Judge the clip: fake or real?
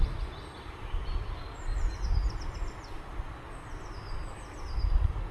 real